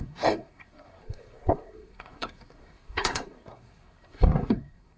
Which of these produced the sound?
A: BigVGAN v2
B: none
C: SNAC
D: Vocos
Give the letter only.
C